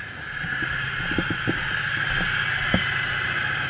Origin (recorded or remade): recorded